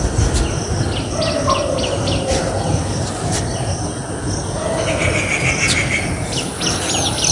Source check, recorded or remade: recorded